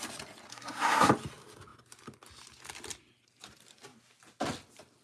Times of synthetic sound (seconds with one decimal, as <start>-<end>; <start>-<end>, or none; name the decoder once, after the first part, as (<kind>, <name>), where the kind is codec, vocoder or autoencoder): 0.5-1.1 (codec, SNAC)

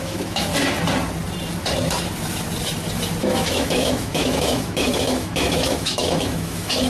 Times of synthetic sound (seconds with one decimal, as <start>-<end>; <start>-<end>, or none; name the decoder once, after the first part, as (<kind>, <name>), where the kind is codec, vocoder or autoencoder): 0.0-0.5 (autoencoder, DAC-VAE); 3.2-6.9